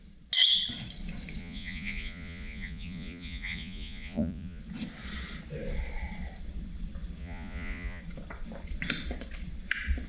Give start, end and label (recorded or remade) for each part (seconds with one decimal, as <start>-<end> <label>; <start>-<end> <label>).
0.0-1.4 recorded; 1.4-4.6 remade; 4.6-7.2 recorded; 7.2-8.0 remade; 8.0-10.1 recorded